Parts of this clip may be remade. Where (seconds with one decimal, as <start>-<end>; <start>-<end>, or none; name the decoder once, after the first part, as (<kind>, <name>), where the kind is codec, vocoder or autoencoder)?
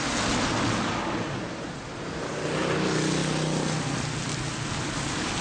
none